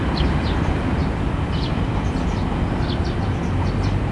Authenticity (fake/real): real